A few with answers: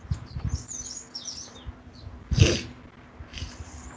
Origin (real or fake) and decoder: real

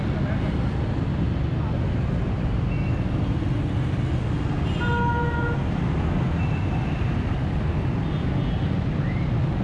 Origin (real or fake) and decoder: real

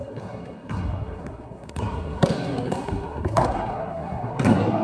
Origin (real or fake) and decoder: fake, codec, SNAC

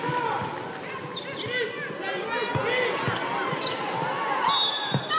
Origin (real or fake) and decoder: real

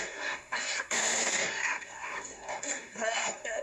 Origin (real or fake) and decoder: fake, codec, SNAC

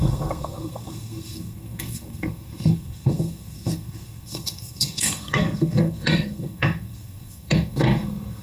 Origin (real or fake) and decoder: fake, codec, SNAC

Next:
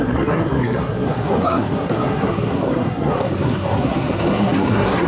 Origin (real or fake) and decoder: fake, codec, SNAC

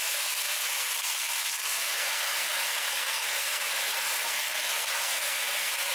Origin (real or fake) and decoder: fake, codec, SNAC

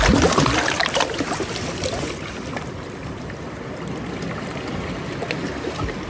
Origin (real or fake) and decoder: real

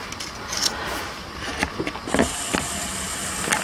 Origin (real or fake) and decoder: real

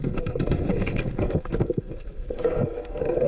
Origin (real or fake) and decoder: fake, codec, SNAC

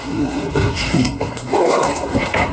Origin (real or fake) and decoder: fake, codec, SNAC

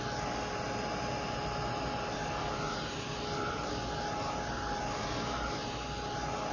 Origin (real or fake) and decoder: real